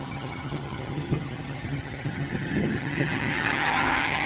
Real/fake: fake